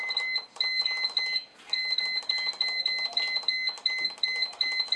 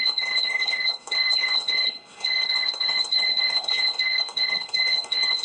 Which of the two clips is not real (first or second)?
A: second